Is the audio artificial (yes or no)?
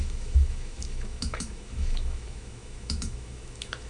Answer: yes